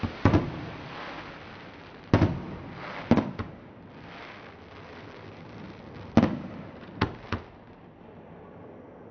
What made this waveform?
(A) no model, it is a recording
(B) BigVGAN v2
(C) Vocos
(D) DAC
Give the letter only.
A